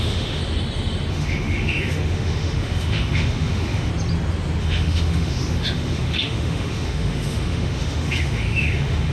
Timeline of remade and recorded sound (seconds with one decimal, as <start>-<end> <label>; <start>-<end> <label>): 0.0-0.4 remade; 0.4-1.1 recorded; 1.1-3.9 remade; 3.9-4.6 recorded; 4.6-9.1 remade